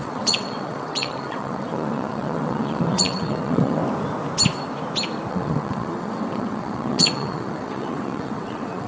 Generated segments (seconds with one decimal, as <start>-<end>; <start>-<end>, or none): 0.0-3.8; 5.3-8.9